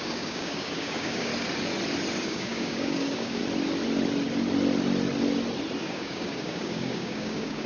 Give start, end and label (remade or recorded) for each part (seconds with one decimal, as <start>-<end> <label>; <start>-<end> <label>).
0.0-1.3 remade; 1.3-2.2 recorded; 2.2-3.4 remade; 3.4-5.8 recorded; 5.8-7.7 remade